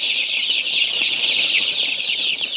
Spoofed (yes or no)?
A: yes